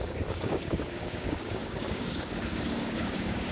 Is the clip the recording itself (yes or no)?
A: no